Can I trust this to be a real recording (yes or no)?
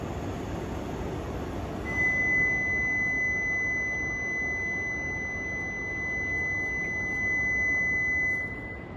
yes